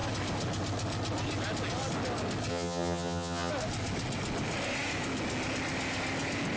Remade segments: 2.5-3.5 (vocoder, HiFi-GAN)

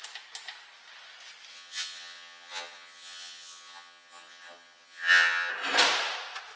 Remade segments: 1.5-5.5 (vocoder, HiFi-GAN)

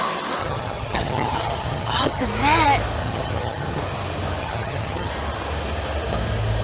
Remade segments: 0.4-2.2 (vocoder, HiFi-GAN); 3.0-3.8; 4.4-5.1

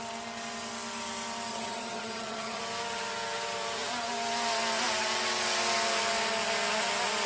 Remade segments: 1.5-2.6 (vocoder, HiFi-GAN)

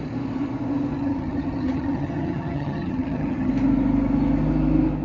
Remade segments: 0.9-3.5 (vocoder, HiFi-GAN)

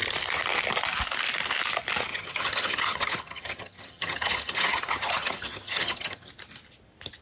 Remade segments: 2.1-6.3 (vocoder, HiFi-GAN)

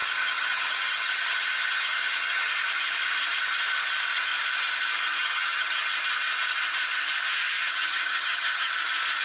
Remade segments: 0.0-2.5 (vocoder, HiFi-GAN); 5.2-5.8; 7.6-8.7

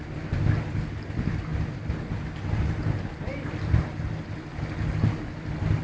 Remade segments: none